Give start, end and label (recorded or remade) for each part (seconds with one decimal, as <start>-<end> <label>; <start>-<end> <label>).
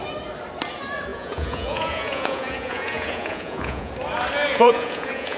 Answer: 0.0-1.1 recorded; 1.1-3.9 remade; 3.9-4.5 recorded; 4.5-5.4 remade